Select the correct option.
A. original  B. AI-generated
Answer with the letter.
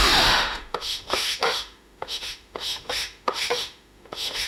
B